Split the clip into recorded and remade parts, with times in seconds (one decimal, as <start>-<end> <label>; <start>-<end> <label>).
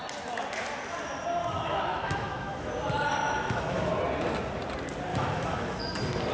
0.0-1.4 recorded; 1.4-2.7 remade; 2.7-3.2 recorded; 3.2-3.9 remade; 3.9-5.1 recorded; 5.1-5.8 remade; 5.8-6.3 recorded